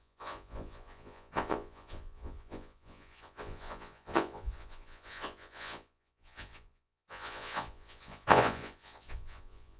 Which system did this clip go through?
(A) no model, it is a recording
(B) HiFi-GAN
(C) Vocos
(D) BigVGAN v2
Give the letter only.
C